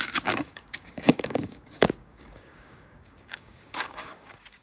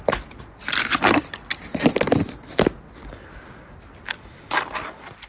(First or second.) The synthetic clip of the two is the first